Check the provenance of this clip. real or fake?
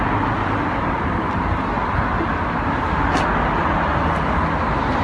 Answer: real